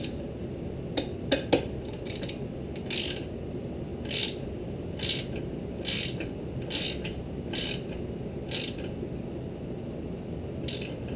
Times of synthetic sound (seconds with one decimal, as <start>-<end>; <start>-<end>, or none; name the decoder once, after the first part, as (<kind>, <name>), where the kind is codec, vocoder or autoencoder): none